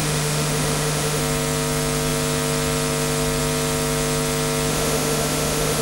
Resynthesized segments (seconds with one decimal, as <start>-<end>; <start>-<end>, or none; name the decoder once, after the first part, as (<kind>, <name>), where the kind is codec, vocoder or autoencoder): 0.0-1.2 (autoencoder, DAC-VAE); 4.7-5.8